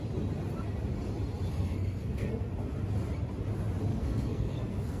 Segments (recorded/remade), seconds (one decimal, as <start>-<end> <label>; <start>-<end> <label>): 0.0-1.5 recorded; 1.5-2.5 remade; 2.5-3.9 recorded; 3.9-5.0 remade

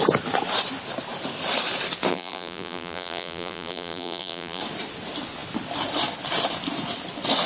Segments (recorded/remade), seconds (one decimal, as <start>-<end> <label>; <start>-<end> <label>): 0.0-2.1 recorded; 2.1-4.6 remade; 4.6-7.5 recorded